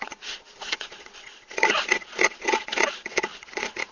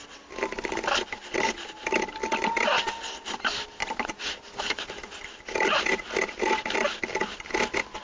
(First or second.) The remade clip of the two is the first